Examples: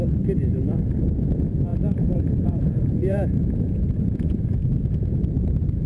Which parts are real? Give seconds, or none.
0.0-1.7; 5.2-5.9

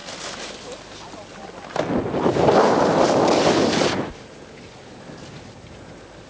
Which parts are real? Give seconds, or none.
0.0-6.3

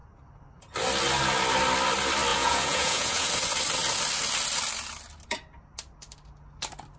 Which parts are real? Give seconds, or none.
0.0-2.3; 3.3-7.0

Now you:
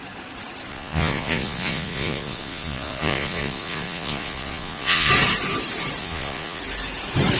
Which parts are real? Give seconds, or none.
0.0-0.7; 5.1-6.0; 6.6-7.4

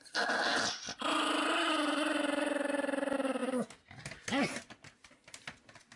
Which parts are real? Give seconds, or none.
0.0-6.0

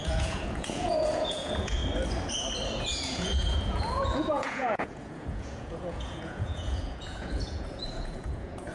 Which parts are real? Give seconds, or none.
1.8-2.8